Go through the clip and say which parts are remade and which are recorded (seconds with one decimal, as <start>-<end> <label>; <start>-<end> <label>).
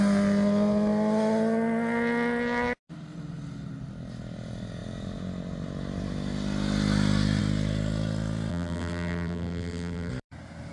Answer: 0.0-8.5 recorded; 8.5-10.1 remade; 10.1-10.7 recorded